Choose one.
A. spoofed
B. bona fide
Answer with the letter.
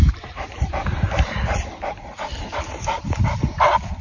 A